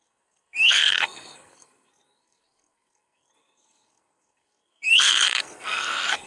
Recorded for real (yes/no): no